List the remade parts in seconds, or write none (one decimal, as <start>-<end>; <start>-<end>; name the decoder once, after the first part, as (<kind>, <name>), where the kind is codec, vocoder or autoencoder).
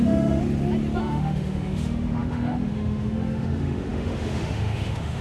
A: 0.0-0.4 (autoencoder, DAC-VAE); 1.0-5.2